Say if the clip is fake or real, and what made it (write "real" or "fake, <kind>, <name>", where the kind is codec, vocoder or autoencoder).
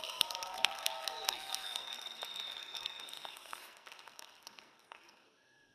fake, codec, SNAC